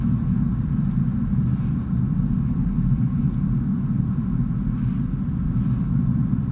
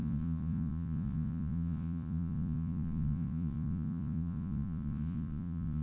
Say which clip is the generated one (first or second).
second